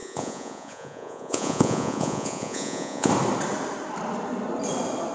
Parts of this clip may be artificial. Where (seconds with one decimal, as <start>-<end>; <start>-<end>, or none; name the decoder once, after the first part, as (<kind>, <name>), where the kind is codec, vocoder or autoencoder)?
0.0-3.1 (vocoder, Vocos)